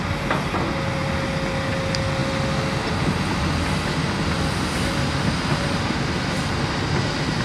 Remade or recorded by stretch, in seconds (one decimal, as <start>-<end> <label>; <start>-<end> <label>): 0.0-7.4 recorded